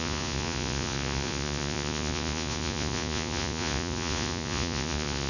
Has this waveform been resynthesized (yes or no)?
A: yes